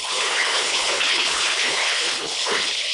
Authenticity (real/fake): fake